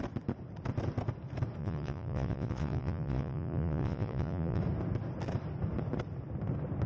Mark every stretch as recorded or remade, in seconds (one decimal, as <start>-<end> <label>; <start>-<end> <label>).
0.0-1.6 recorded; 1.6-4.6 remade; 4.6-6.9 recorded